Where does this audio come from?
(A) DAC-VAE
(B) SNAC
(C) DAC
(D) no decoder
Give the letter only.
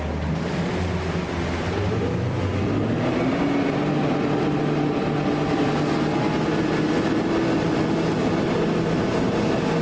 D